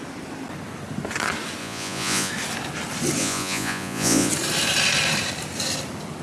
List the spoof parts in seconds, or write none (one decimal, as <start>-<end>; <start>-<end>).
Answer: 1.6-2.3; 3.2-4.3